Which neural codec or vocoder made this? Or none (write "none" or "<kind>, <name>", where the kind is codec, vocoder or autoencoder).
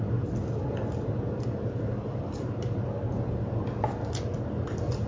none